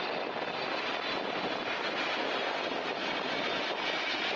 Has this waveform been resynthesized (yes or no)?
no